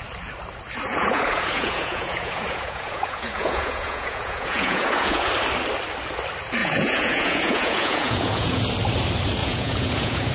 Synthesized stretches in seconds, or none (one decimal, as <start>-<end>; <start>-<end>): 0.9-5.3; 6.6-8.6; 9.4-10.3